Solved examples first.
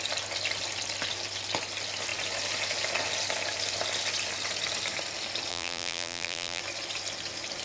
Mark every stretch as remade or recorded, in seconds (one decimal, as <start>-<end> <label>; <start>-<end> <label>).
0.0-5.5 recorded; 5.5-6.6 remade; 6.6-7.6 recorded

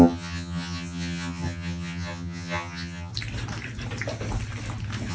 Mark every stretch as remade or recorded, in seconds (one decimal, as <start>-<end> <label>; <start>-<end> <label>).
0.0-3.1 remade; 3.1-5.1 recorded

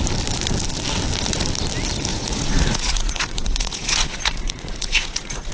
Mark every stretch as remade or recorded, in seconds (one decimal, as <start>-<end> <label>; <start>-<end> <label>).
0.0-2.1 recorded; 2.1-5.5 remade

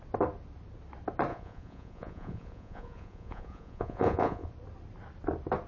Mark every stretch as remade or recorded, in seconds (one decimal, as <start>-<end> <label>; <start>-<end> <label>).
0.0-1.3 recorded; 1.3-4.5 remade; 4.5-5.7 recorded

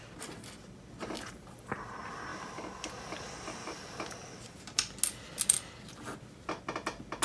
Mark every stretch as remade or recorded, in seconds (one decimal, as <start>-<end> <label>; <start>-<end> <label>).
0.0-7.2 recorded

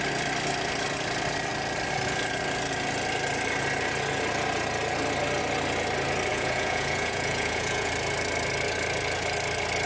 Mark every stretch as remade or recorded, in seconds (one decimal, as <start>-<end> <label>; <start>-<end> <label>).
0.0-6.3 recorded; 6.3-7.9 remade; 7.9-9.9 recorded